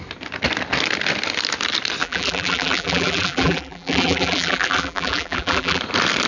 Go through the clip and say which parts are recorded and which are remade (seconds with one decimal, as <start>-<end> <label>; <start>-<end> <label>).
0.0-2.0 recorded; 2.0-5.8 remade; 5.8-6.3 recorded